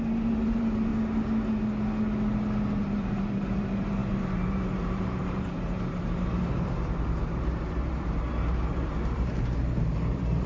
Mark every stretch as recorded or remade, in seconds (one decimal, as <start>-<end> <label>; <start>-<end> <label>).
0.0-0.9 remade; 0.9-2.8 recorded; 2.8-10.5 remade

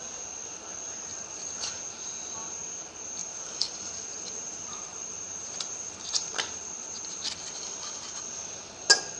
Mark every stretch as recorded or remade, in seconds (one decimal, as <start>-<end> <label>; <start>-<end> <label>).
0.0-1.1 recorded; 1.1-1.8 remade; 1.8-3.2 recorded; 3.2-7.2 remade; 7.2-9.2 recorded

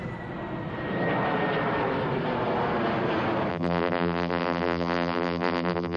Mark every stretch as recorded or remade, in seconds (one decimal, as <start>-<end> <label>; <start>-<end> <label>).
0.0-3.5 recorded; 3.5-6.0 remade